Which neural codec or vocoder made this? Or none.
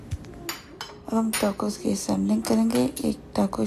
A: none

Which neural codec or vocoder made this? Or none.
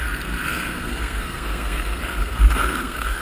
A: codec, SNAC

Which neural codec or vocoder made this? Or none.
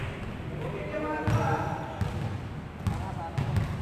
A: none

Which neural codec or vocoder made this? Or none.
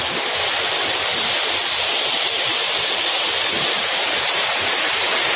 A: none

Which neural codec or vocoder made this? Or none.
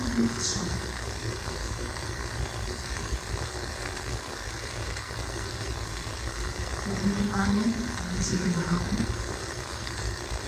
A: codec, SNAC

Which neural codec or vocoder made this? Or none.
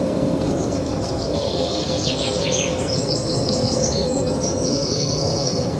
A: codec, SNAC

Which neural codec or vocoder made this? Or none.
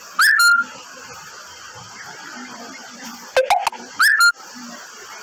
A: none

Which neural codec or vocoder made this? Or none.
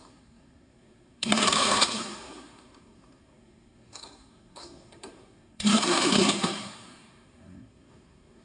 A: codec, SNAC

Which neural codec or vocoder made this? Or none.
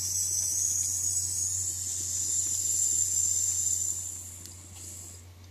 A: none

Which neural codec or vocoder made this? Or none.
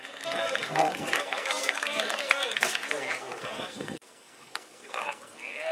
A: codec, SNAC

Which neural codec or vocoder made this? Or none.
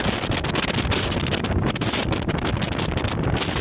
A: none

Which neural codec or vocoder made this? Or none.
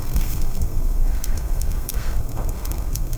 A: codec, SNAC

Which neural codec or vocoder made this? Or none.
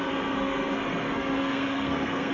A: codec, SNAC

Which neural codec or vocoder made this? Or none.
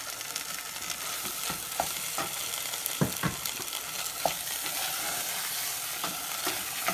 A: none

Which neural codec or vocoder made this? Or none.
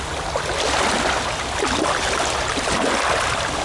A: none